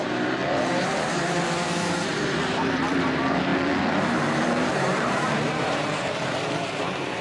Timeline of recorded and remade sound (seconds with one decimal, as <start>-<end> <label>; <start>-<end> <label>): 0.0-3.5 remade; 3.5-4.2 recorded; 4.2-7.2 remade